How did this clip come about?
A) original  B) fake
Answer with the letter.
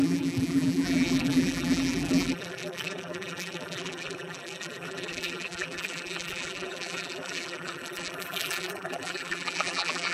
B